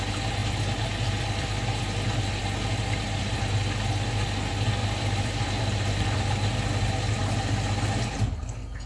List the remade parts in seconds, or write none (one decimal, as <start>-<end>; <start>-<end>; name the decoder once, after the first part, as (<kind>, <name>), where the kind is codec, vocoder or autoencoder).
4.8-5.6 (vocoder, BigVGAN v2)